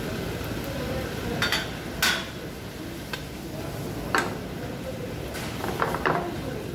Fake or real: real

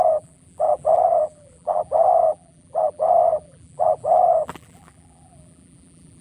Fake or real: fake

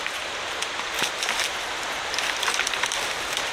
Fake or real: real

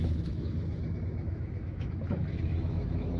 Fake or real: fake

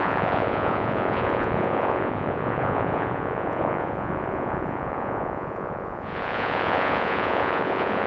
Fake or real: fake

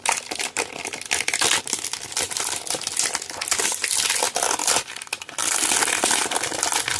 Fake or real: real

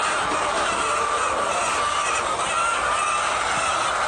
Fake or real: real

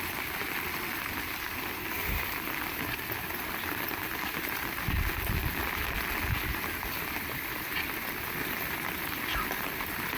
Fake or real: real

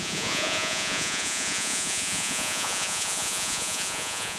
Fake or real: fake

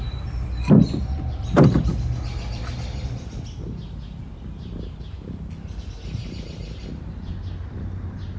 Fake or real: real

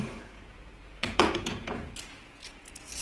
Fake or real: fake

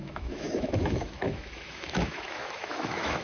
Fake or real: fake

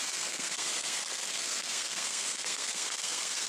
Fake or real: fake